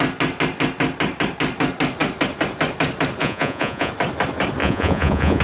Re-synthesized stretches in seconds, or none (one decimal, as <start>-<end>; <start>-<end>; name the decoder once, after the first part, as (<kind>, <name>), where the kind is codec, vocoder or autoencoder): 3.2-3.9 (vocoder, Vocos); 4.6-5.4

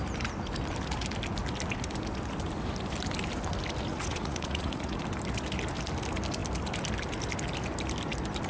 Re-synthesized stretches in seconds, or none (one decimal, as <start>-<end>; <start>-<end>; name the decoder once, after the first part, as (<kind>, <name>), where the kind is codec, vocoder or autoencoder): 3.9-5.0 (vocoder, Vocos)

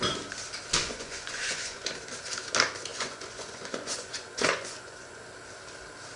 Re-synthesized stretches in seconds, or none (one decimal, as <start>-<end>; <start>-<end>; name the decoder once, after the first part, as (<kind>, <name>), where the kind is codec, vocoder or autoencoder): 0.8-1.9 (vocoder, Vocos); 2.9-5.3

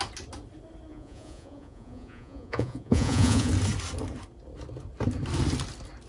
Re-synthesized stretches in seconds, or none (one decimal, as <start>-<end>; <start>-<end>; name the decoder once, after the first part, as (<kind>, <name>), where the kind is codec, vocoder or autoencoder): 0.9-3.5 (vocoder, Vocos)

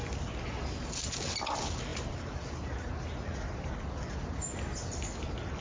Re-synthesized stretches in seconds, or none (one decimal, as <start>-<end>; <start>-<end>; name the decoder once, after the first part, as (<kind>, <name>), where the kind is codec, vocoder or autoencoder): none